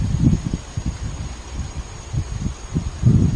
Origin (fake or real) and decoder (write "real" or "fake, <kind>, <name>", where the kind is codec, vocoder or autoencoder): real